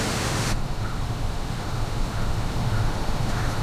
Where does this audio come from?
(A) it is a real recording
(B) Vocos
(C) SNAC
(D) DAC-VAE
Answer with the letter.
D